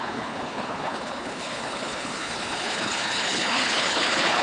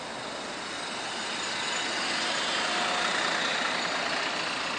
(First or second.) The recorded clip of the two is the second